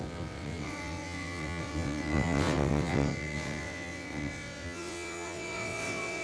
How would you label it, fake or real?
fake